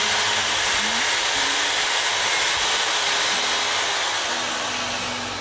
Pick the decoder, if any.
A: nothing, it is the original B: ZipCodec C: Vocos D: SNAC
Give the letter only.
A